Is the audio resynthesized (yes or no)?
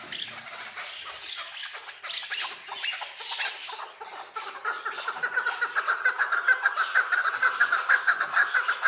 no